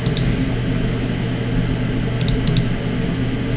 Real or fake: real